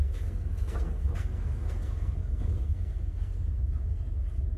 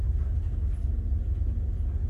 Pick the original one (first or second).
second